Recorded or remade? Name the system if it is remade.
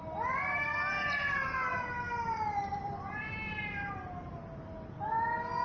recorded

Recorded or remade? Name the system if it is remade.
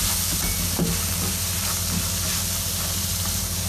recorded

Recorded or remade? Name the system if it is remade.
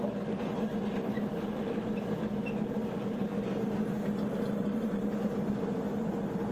remade, vocoder, BigVGAN v2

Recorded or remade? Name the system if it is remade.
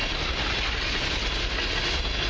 recorded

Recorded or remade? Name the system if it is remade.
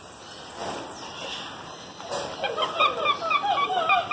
recorded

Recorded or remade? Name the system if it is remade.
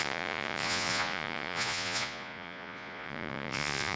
remade, vocoder, Vocos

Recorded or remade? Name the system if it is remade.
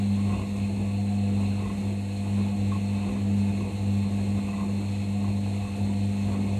recorded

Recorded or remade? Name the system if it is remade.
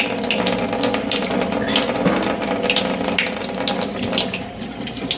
recorded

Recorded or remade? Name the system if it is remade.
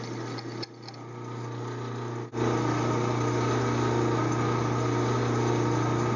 recorded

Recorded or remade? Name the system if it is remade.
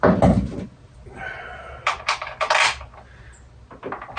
recorded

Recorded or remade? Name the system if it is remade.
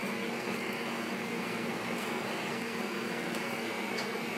remade, codec, SNAC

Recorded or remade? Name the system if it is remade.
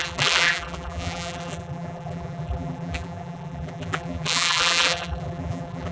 remade, vocoder, BigVGAN v2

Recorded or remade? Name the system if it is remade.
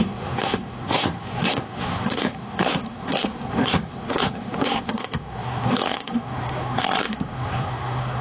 remade, codec, SNAC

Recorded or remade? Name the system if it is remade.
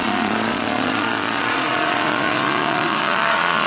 remade, vocoder, Vocos